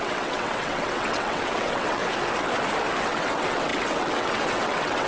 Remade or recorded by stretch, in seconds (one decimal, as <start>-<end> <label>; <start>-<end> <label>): 0.0-2.0 remade; 2.0-3.0 recorded; 3.0-5.1 remade